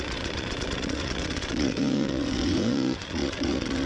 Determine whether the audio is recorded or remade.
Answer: remade